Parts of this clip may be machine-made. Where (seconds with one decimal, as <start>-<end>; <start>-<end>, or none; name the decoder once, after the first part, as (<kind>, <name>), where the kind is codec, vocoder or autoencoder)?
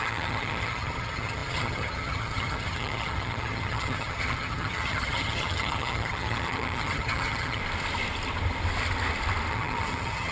0.0-7.6 (vocoder, HiFi-GAN); 9.5-10.3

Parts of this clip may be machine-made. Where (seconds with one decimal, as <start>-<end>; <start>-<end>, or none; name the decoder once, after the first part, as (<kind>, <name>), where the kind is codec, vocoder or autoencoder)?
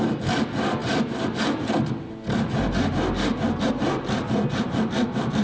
none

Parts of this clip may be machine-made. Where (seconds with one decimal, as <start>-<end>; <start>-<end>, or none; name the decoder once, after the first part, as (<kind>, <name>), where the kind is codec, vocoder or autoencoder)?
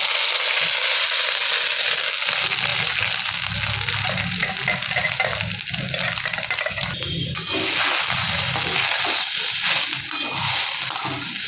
none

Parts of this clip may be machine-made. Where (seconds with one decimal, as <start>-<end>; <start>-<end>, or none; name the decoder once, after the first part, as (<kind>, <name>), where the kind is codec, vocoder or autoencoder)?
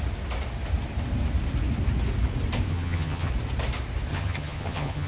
2.7-3.3 (vocoder, HiFi-GAN); 4.1-5.1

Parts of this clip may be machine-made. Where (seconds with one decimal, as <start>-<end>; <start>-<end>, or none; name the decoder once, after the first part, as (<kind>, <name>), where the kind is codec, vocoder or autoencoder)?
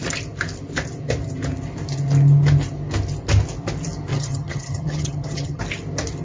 4.1-5.6 (vocoder, HiFi-GAN)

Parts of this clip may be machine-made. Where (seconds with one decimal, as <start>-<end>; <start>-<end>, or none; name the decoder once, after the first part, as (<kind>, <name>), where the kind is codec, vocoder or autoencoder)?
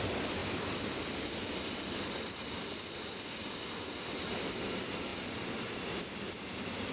none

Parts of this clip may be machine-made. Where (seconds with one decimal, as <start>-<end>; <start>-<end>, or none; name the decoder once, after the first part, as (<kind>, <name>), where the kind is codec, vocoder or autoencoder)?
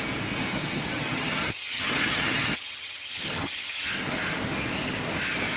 0.5-3.9 (vocoder, HiFi-GAN)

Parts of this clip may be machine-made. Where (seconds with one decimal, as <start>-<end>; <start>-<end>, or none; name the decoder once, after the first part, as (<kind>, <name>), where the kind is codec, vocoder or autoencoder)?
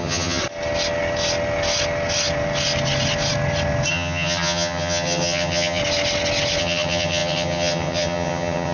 0.0-0.4 (vocoder, HiFi-GAN); 3.9-5.8; 6.6-8.7